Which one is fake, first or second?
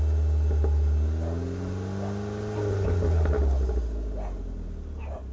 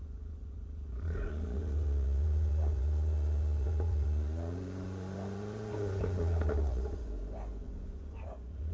second